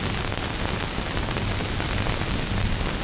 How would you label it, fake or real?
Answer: real